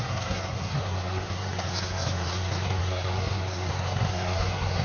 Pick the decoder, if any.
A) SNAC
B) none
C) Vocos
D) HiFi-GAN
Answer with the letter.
A